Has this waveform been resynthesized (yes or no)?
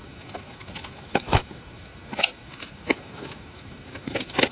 yes